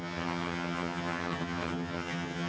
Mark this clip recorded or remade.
remade